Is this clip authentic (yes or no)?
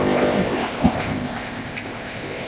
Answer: no